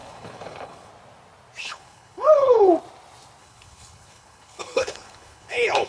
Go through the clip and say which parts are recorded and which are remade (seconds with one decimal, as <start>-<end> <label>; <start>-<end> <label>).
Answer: 0.0-0.9 remade; 0.9-1.6 recorded; 1.6-2.7 remade; 2.7-3.4 recorded; 3.4-5.9 remade